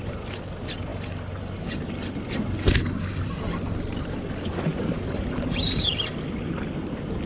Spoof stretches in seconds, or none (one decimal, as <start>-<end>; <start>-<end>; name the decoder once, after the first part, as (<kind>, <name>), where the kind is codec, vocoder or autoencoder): none